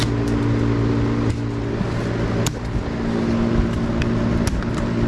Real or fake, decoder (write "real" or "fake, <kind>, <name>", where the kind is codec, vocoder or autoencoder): real